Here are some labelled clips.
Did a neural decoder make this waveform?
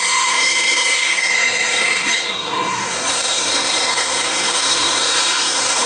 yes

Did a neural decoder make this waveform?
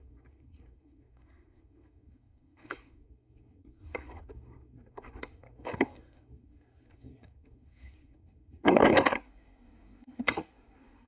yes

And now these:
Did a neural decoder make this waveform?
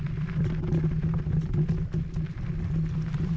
no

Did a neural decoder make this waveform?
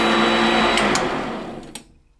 no